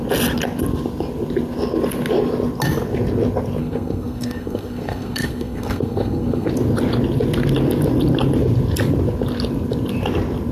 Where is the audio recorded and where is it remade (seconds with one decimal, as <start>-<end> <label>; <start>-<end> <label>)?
0.0-3.6 recorded; 3.6-6.5 remade; 6.5-10.5 recorded